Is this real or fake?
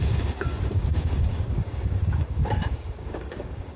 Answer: fake